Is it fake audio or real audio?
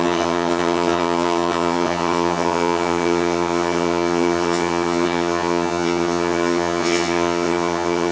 fake